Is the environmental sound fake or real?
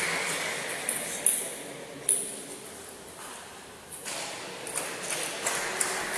real